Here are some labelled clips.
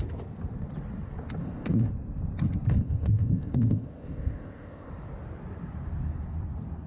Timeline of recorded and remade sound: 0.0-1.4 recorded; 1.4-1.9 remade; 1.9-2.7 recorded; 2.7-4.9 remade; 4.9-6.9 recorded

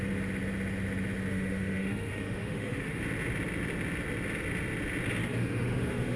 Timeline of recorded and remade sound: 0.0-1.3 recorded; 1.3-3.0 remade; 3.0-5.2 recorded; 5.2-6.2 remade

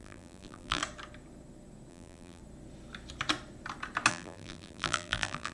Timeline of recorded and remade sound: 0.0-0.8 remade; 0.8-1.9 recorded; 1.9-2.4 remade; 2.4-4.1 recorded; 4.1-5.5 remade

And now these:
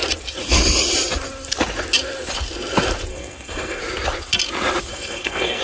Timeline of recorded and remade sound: 0.0-3.1 recorded; 3.1-3.8 remade; 3.8-4.9 recorded; 4.9-5.6 remade

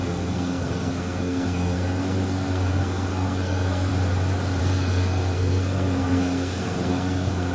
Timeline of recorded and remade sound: 0.0-3.9 remade; 3.9-4.6 recorded; 4.6-7.5 remade